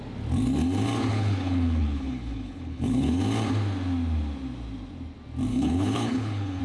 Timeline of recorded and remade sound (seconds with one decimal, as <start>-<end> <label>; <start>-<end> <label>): 0.0-1.1 recorded; 1.1-3.2 remade; 3.2-5.5 recorded; 5.5-6.6 remade

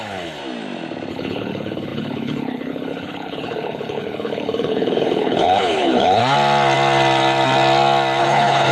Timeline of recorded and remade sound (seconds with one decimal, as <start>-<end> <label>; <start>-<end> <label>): 0.0-0.4 remade; 0.4-1.1 recorded; 1.1-6.2 remade; 6.2-8.2 recorded; 8.2-8.7 remade

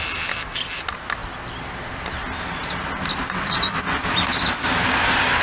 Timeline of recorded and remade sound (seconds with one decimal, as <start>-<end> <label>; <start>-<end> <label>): 0.0-5.4 recorded

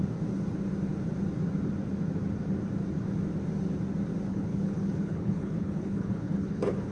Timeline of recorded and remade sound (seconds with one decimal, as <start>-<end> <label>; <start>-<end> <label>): 0.0-4.3 recorded; 4.3-6.9 remade

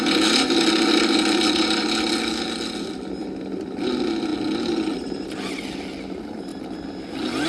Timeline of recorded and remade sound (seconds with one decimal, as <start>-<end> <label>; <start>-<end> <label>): 0.0-7.5 recorded